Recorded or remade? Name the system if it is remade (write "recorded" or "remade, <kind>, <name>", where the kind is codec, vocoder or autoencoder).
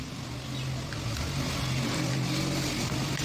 recorded